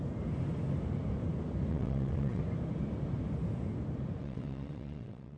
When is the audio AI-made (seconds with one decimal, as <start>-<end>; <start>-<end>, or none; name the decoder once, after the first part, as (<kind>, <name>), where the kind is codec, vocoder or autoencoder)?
1.7-2.4 (vocoder, WaveNeXt); 4.2-5.4